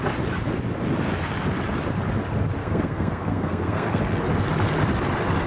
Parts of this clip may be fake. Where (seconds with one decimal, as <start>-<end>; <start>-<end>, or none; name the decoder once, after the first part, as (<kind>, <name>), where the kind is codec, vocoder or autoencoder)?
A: 2.6-4.0 (codec, SNAC)